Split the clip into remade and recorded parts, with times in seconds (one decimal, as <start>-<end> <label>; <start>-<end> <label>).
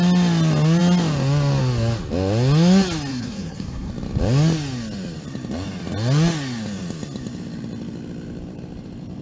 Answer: 0.0-3.1 recorded; 3.1-3.9 remade; 3.9-9.2 recorded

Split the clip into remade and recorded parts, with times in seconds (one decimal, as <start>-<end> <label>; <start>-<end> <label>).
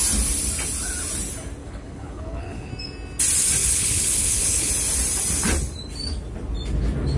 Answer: 0.0-1.6 recorded; 1.6-2.7 remade; 2.7-3.6 recorded; 3.6-4.7 remade; 4.7-7.2 recorded